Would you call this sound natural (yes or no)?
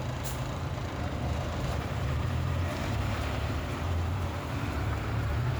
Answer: no